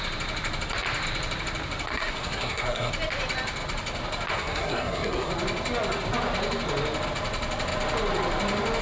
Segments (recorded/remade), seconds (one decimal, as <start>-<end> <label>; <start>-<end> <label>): 0.0-1.9 recorded; 1.9-2.9 remade; 2.9-4.3 recorded; 4.3-5.3 remade; 5.3-8.8 recorded